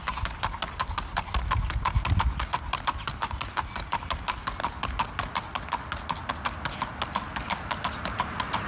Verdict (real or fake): real